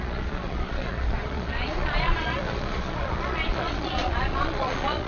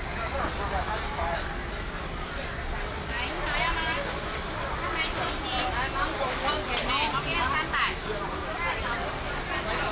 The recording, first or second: second